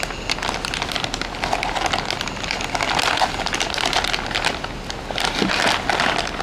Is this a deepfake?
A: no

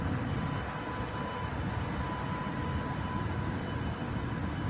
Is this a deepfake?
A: no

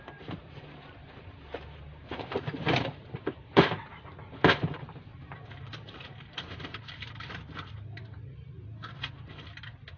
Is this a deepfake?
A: yes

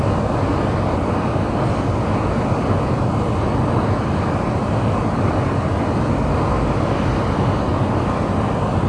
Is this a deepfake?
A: no